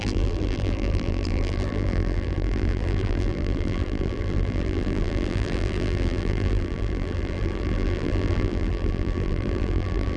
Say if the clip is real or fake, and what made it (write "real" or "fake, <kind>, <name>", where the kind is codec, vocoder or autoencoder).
fake, vocoder, BigVGAN v2